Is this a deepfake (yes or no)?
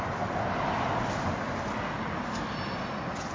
no